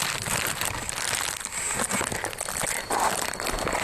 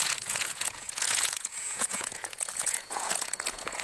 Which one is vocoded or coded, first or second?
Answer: second